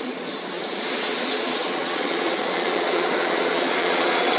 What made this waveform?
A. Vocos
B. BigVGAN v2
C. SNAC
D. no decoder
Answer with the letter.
A